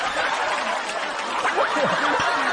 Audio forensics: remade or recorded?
recorded